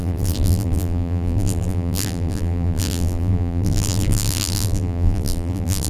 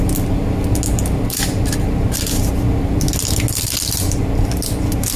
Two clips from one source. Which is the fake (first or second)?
first